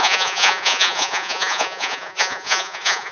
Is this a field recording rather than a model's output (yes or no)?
no